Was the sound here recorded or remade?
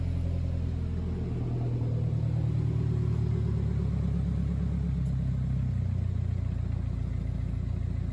recorded